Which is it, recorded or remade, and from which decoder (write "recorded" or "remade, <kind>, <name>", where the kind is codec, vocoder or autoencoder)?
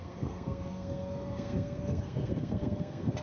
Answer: remade, codec, SNAC